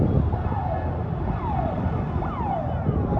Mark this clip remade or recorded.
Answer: recorded